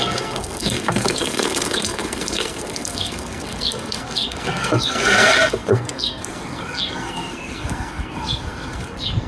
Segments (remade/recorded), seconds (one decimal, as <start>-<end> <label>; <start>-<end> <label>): 0.0-9.3 remade